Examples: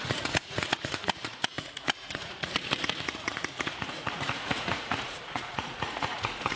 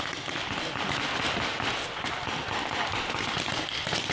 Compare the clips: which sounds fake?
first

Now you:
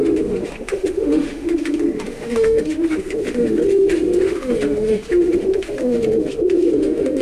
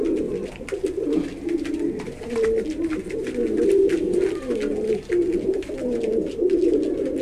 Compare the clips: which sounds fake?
first